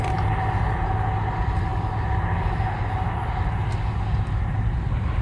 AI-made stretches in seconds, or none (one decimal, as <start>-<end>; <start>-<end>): none